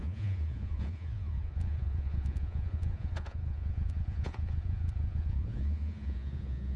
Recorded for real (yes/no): no